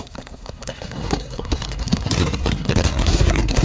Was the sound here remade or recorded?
remade